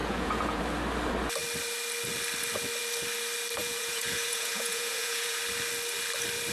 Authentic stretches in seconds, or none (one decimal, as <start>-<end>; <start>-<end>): 0.6-3.6; 5.4-6.5